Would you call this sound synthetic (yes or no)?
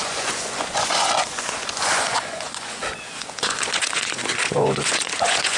yes